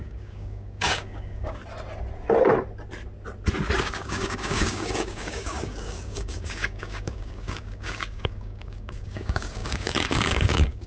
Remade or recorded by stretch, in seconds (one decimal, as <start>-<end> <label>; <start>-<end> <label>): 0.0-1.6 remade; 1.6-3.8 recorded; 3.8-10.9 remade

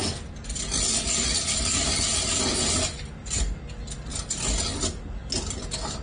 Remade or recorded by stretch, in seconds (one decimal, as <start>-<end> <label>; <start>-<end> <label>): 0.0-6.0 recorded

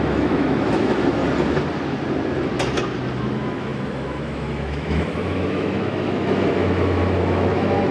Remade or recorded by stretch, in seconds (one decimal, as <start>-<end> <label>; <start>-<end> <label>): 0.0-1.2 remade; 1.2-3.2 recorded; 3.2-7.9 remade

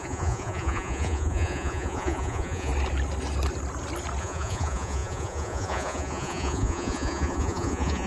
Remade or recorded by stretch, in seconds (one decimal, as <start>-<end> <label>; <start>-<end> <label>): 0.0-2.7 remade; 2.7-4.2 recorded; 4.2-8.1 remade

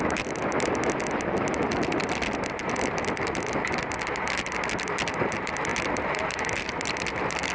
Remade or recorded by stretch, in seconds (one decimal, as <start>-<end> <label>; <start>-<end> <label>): 0.0-7.5 recorded

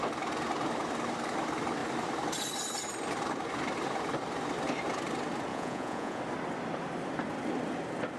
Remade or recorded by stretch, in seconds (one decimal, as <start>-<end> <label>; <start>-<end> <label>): 0.0-5.5 recorded; 5.5-6.2 remade; 6.2-8.2 recorded